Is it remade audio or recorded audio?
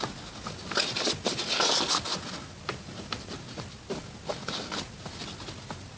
recorded